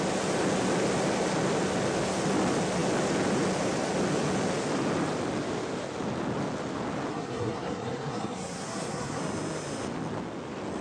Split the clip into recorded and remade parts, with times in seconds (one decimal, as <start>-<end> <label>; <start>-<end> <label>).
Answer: 0.0-7.1 recorded; 7.1-9.2 remade; 9.2-10.8 recorded